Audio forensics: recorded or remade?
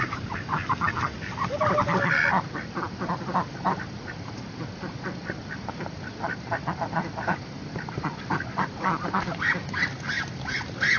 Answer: recorded